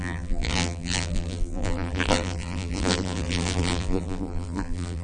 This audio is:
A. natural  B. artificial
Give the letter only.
B